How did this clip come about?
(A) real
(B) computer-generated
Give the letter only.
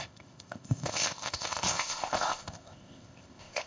B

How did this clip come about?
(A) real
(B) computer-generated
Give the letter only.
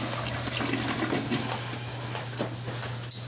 A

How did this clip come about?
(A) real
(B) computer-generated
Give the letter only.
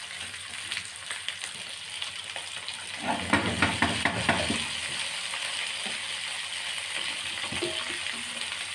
A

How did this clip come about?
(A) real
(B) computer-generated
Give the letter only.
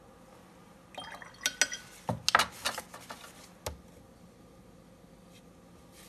A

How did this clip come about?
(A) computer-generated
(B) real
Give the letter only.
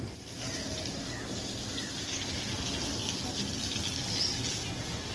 B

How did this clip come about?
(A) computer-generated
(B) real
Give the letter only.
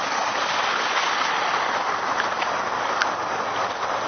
B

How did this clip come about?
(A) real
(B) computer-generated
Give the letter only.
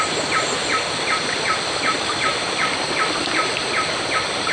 A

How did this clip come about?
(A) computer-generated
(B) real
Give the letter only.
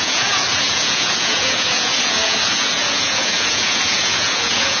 A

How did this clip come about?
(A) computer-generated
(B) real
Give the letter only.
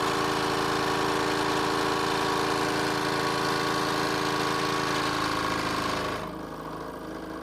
B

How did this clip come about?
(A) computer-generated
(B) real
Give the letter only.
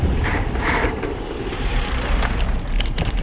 A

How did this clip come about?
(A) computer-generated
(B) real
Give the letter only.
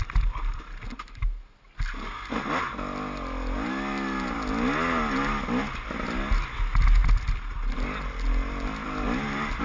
B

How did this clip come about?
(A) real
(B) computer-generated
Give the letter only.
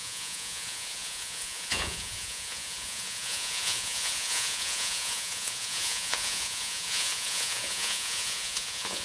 B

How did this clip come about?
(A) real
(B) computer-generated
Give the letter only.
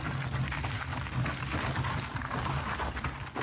A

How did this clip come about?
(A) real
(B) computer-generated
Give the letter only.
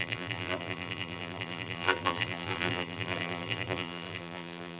B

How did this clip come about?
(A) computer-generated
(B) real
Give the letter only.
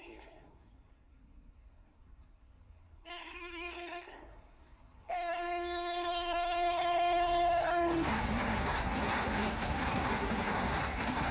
A